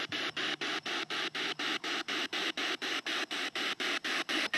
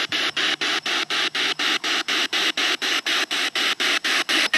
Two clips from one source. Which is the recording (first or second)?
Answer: second